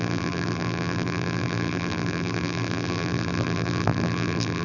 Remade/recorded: remade